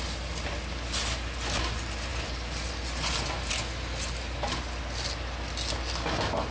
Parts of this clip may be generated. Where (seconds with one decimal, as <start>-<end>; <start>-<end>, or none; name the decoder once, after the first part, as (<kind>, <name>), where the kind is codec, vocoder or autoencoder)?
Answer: none